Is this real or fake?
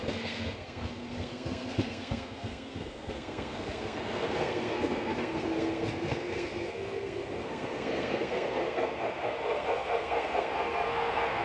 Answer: fake